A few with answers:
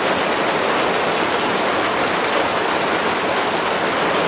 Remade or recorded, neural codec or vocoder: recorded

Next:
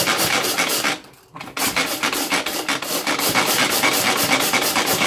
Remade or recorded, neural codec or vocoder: recorded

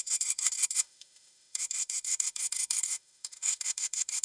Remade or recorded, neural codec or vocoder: remade, autoencoder, DAC-VAE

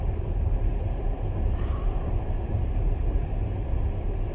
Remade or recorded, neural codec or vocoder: recorded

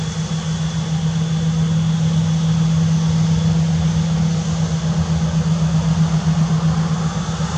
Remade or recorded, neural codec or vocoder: recorded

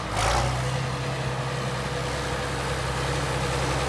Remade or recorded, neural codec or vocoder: recorded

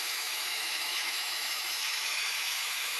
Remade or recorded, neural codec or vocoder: remade, autoencoder, DAC-VAE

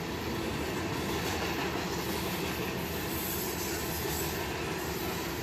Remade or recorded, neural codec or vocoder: recorded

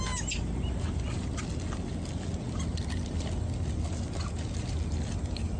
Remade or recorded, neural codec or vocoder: recorded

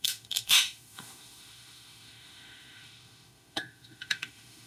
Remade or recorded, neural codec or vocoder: remade, autoencoder, DAC-VAE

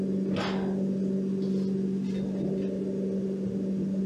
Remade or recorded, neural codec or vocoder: recorded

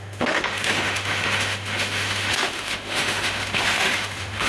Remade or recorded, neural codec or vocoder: remade, autoencoder, DAC-VAE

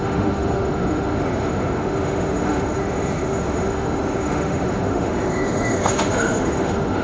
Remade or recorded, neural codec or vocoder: remade, autoencoder, DAC-VAE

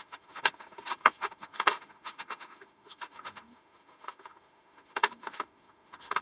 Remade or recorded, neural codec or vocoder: remade, autoencoder, DAC-VAE